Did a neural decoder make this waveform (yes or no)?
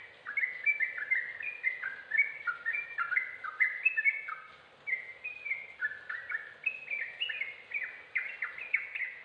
no